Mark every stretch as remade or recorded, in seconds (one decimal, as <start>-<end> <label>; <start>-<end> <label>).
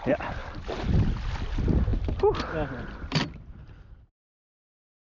0.0-5.1 recorded